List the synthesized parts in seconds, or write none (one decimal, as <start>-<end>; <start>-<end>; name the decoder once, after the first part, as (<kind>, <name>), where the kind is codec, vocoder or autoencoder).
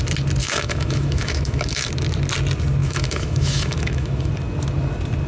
0.4-1.9 (autoencoder, DAC-VAE); 2.8-4.3